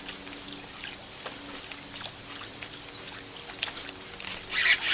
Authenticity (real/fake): real